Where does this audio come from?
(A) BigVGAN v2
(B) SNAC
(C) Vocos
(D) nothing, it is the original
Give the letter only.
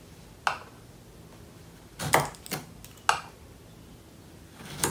D